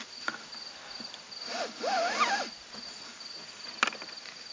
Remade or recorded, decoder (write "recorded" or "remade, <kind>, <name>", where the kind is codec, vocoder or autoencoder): recorded